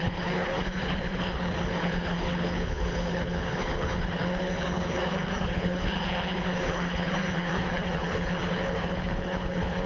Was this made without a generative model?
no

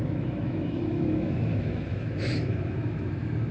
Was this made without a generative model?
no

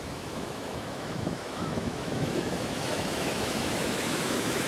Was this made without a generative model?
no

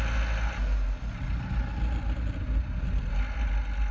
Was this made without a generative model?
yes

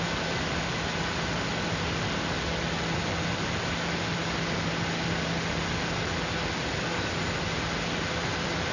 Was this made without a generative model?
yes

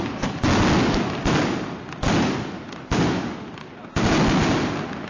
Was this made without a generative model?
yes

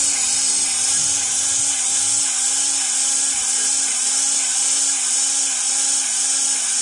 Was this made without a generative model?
yes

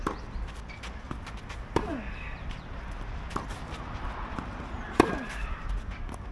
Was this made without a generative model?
no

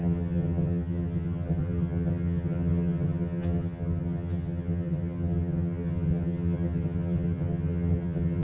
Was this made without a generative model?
no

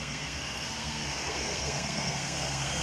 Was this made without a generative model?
no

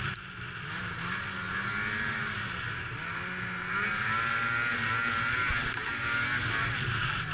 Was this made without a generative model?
yes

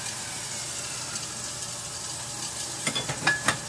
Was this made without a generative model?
yes